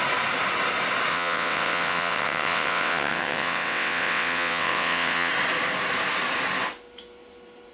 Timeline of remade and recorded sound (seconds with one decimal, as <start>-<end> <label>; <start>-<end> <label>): 0.0-1.1 recorded; 1.1-5.3 remade; 5.3-7.7 recorded